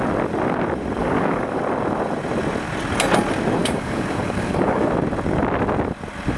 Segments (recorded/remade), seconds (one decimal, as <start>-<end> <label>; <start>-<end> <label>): 0.0-1.0 recorded; 1.0-1.6 remade; 1.6-3.6 recorded; 3.6-4.9 remade; 4.9-6.4 recorded